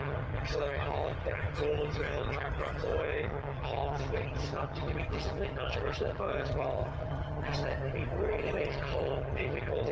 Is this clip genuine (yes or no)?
no